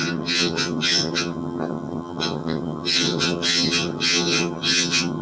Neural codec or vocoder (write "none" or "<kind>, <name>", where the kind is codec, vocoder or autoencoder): vocoder, HiFi-GAN